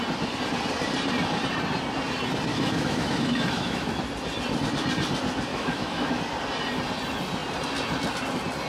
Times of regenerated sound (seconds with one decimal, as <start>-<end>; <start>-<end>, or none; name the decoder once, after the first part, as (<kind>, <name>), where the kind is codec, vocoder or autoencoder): 2.5-4.0 (autoencoder, DAC-VAE); 5.5-6.2